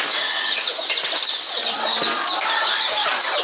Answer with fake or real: real